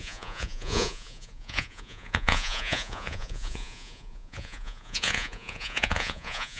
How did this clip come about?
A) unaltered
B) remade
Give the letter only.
B